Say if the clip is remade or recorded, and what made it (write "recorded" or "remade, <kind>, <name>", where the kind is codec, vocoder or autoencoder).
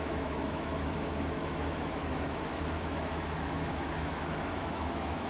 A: remade, autoencoder, DAC-VAE